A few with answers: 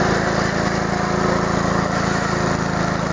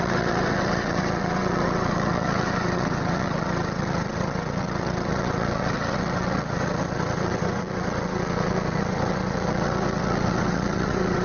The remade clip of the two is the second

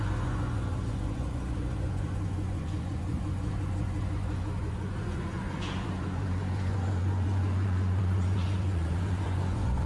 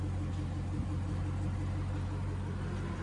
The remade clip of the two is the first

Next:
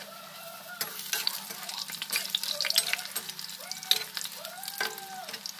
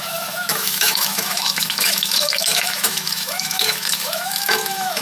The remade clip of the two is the second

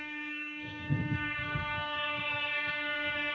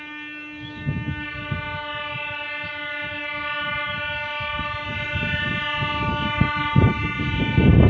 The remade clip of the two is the first